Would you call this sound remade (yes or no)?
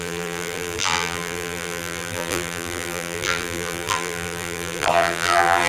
yes